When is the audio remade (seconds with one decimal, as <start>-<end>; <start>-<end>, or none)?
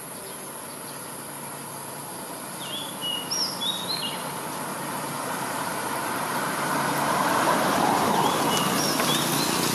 4.7-8.4